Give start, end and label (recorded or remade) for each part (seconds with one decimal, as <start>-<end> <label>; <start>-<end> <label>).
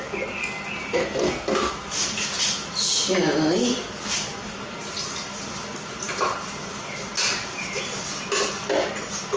0.0-1.0 recorded; 1.0-1.7 remade; 1.7-9.4 recorded